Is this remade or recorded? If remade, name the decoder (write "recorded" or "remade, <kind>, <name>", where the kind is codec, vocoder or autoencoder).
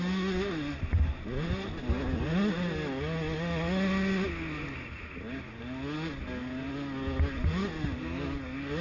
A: recorded